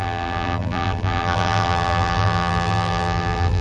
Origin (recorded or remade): remade